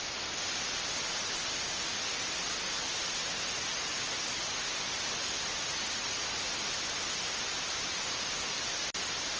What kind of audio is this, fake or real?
real